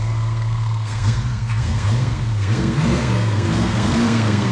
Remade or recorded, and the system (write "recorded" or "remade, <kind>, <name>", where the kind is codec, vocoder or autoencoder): remade, codec, SNAC